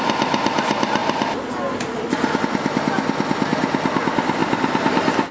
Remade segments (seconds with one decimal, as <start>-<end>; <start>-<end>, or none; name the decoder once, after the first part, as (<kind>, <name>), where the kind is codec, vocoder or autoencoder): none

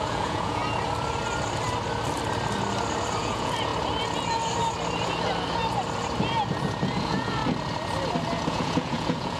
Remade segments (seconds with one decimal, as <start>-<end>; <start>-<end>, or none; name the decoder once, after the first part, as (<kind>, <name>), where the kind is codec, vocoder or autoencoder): 0.0-0.6 (vocoder, Vocos); 3.2-3.7; 7.0-7.4; 8.5-9.4

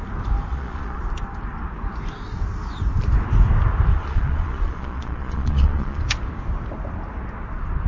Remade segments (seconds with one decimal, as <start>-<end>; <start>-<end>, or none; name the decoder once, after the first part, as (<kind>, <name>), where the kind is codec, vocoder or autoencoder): 0.5-1.0 (vocoder, Vocos); 3.9-6.0

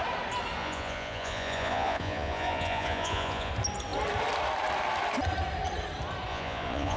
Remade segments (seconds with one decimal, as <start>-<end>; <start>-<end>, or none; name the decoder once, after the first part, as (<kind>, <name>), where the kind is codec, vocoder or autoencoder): 0.6-3.5 (vocoder, Vocos); 6.3-7.0

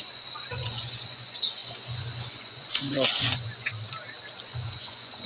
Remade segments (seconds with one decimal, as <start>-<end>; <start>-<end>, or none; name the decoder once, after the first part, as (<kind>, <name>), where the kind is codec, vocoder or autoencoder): 0.0-3.7 (vocoder, Vocos); 4.4-5.3